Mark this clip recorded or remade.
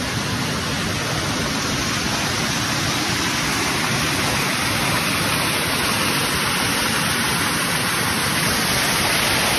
recorded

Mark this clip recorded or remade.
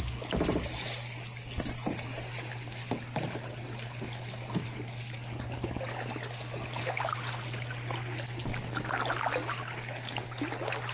recorded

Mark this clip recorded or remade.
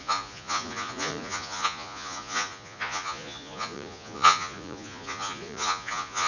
remade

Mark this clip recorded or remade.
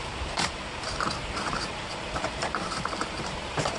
remade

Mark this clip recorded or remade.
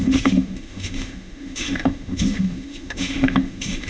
remade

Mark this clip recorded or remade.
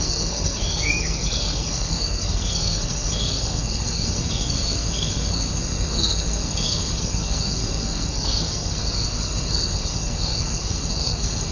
remade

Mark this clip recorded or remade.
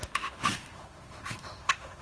remade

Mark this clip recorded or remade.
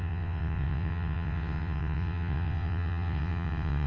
remade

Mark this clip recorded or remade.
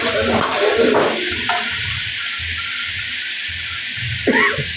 recorded